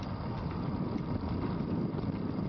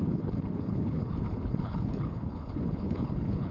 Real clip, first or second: first